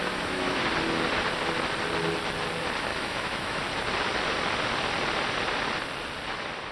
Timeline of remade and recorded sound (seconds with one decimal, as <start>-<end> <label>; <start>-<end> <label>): 0.0-0.6 remade; 0.6-2.9 recorded; 2.9-3.6 remade; 3.6-6.7 recorded